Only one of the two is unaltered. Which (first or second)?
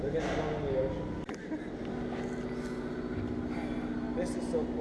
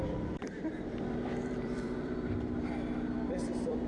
first